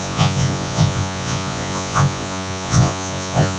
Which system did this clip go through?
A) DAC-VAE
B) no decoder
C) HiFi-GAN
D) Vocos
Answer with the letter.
D